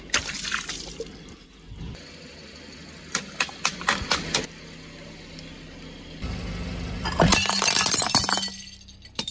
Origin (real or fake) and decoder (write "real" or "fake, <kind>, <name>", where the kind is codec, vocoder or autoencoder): real